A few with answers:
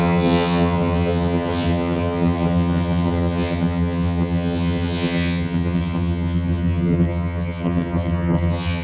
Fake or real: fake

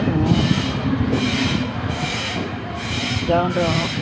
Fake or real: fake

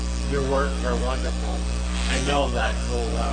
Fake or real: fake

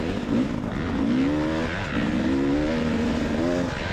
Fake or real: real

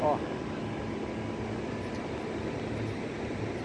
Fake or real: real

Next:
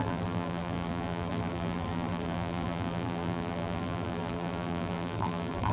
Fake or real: fake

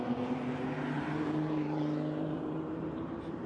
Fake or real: fake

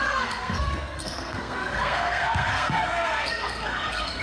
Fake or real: fake